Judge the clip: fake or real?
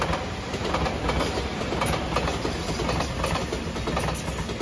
real